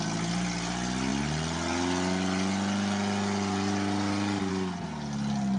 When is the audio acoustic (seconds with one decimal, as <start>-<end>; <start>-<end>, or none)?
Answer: 0.0-5.6